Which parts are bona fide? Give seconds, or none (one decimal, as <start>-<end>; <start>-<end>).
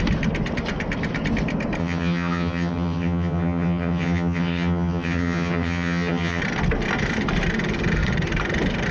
0.0-1.8; 6.4-8.9